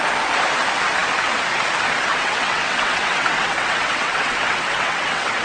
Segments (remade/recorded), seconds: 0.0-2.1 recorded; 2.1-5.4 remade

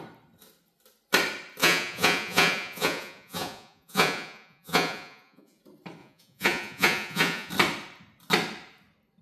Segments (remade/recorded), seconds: 0.0-1.6 recorded; 1.6-5.6 remade; 5.6-6.0 recorded; 6.0-7.5 remade; 7.5-9.2 recorded

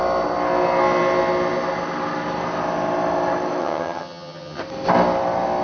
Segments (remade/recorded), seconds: 0.0-3.6 recorded; 3.6-4.6 remade; 4.6-5.6 recorded

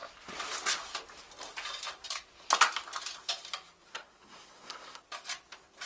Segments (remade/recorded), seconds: 0.0-3.9 recorded; 3.9-5.0 remade; 5.0-5.9 recorded

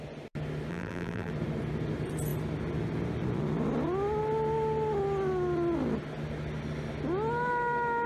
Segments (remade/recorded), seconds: 0.0-0.7 recorded; 0.7-1.3 remade; 1.3-8.1 recorded

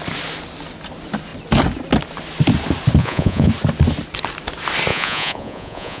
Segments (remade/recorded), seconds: 0.0-3.0 recorded; 3.0-3.5 remade; 3.5-4.9 recorded; 4.9-6.0 remade

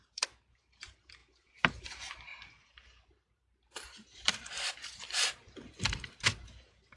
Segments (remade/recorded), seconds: 0.0-7.0 remade

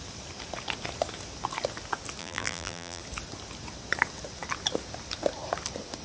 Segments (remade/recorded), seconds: 0.0-2.2 recorded; 2.2-3.0 remade; 3.0-6.0 recorded